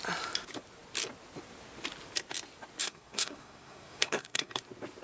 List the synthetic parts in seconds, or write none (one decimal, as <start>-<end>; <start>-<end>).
2.8-4.5